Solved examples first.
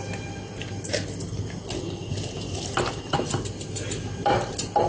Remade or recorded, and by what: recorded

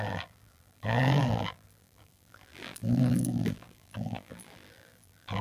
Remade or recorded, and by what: remade, vocoder, BigVGAN v2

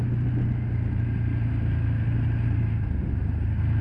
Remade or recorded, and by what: recorded